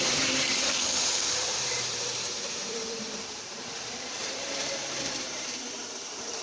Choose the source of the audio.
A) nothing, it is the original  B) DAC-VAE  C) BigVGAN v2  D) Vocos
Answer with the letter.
C